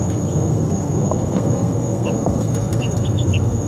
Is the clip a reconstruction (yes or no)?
yes